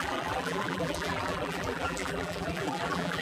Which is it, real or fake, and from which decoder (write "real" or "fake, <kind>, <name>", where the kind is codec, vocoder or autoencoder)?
fake, vocoder, BigVGAN v2